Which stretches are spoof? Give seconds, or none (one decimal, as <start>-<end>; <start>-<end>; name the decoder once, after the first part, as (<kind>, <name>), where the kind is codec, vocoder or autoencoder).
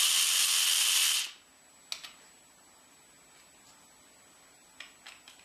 none